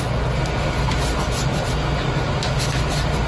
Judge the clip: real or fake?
real